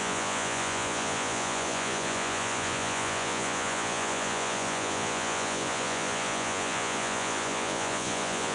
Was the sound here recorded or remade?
remade